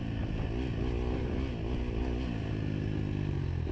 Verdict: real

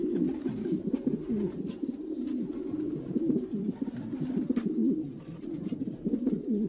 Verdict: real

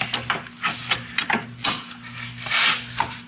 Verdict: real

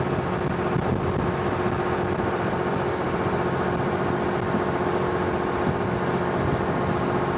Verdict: real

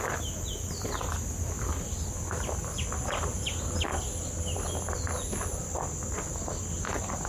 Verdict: real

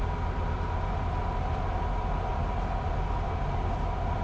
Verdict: real